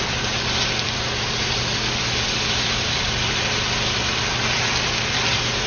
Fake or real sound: real